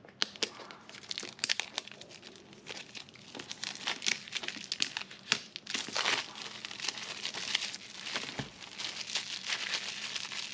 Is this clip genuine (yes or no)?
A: yes